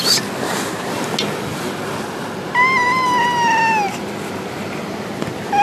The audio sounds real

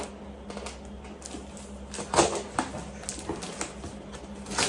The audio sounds real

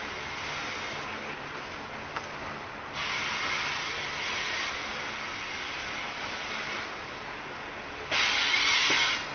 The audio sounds real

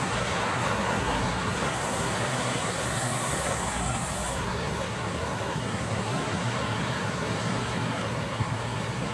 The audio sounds fake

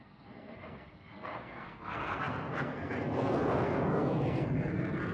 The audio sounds fake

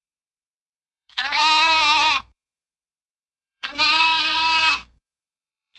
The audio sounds fake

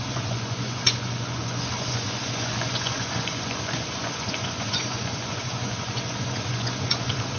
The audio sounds fake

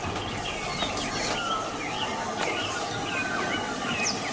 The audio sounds real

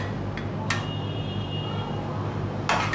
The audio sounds real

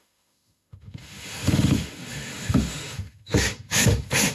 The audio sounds fake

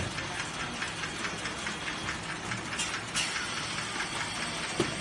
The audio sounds real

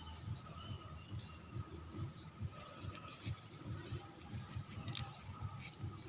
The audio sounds real